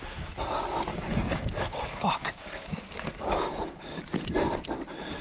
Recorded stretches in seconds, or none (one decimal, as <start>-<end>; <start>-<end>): 0.0-0.9; 4.0-5.2